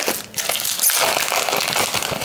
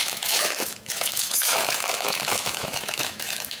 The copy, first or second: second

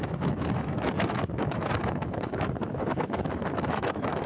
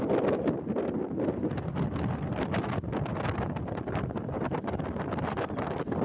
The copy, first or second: first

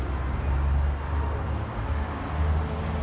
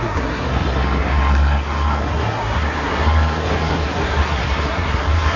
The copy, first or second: second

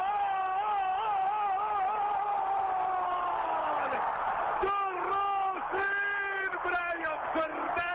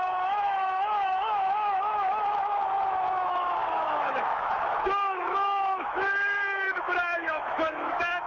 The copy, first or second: second